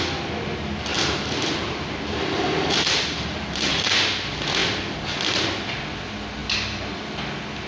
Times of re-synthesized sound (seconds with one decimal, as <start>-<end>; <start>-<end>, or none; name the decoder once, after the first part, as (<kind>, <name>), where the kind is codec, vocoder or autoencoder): 0.9-3.9 (vocoder, BigVGAN v2)